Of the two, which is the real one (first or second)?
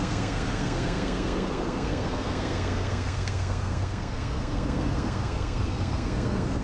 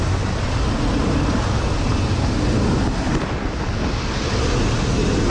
second